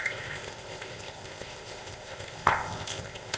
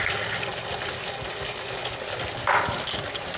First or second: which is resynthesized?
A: first